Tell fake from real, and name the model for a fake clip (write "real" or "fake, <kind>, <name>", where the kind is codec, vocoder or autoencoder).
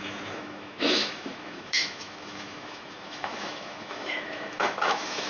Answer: fake, autoencoder, DAC-VAE